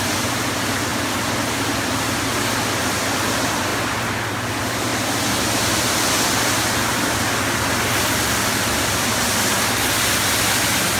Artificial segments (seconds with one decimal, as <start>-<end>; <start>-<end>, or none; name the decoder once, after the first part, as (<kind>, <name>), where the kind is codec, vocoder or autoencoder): none